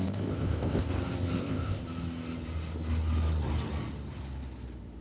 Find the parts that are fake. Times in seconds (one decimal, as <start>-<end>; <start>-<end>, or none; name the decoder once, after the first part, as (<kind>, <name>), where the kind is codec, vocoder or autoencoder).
0.0-0.9 (codec, ZipCodec); 1.4-1.8